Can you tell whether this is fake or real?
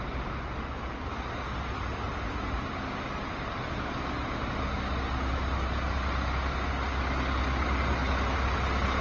real